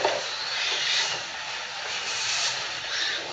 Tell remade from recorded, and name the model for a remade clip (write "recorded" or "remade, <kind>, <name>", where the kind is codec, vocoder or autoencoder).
recorded